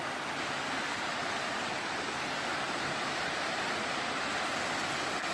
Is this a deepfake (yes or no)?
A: no